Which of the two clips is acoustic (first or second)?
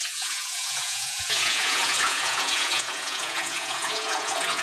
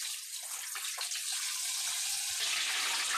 second